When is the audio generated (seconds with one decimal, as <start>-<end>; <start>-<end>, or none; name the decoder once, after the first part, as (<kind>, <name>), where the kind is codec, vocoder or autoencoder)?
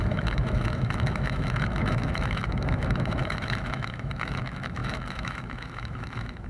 0.0-6.5 (autoencoder, DAC-VAE)